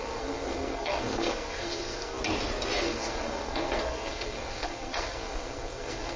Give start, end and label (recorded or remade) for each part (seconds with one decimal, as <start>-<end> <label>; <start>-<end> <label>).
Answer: 0.0-2.2 remade; 2.2-2.8 recorded; 2.8-6.2 remade